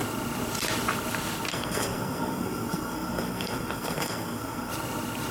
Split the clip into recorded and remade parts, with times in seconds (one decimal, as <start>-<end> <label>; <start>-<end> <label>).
0.0-1.5 recorded; 1.5-4.7 remade; 4.7-5.3 recorded

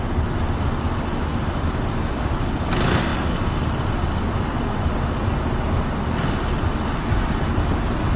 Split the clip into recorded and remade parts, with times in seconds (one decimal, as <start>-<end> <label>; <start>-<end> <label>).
0.0-1.3 recorded; 1.3-2.7 remade; 2.7-8.2 recorded

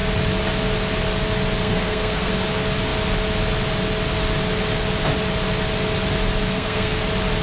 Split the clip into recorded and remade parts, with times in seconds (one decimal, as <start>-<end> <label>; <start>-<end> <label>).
0.0-1.6 recorded; 1.6-2.3 remade; 2.3-6.4 recorded; 6.4-7.0 remade; 7.0-7.4 recorded